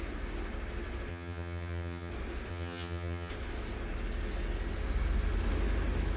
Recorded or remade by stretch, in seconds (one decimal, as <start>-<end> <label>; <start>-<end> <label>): 0.0-1.1 recorded; 1.1-2.1 remade; 2.1-2.5 recorded; 2.5-3.3 remade; 3.3-6.2 recorded